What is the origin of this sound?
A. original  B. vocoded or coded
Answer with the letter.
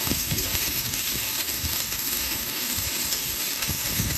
B